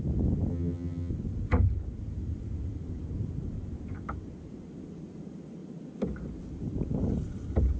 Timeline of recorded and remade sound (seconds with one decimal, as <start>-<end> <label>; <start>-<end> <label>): 0.0-0.5 recorded; 0.5-1.1 remade; 1.1-7.8 recorded